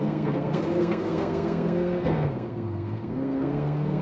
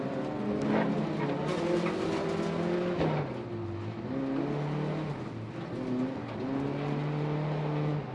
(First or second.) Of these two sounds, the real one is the second